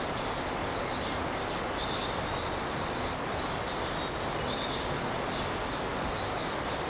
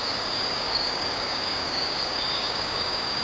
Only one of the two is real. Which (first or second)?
first